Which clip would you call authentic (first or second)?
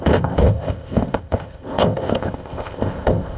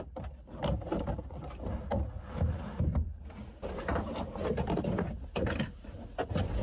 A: second